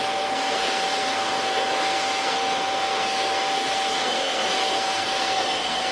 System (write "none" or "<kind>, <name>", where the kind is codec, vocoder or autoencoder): codec, SNAC